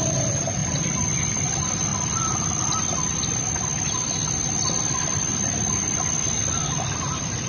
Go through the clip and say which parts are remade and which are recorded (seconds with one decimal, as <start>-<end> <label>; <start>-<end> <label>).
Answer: 0.0-7.5 recorded